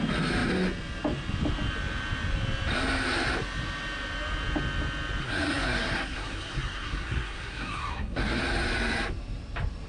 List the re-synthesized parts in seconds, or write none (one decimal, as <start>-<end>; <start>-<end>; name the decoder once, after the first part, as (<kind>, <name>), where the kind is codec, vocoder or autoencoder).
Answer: 5.2-8.4 (codec, SNAC)